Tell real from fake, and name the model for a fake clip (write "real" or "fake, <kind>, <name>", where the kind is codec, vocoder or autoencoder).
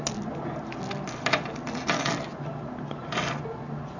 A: real